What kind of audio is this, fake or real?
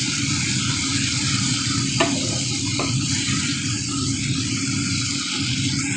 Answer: real